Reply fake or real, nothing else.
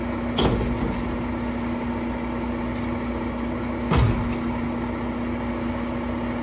real